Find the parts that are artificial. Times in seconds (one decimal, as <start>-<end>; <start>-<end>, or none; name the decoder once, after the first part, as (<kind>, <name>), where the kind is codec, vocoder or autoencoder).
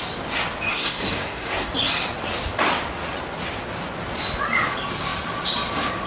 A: 0.7-1.7 (codec, SNAC)